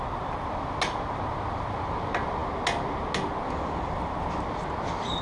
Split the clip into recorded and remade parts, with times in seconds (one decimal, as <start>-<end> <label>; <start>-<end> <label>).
0.0-5.2 recorded